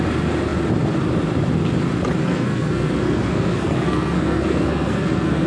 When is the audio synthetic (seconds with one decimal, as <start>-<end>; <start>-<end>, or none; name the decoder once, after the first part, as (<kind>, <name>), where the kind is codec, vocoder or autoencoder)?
2.2-5.5 (codec, SNAC)